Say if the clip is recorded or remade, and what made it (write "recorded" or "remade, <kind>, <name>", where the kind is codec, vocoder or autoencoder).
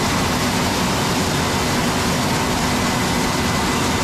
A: recorded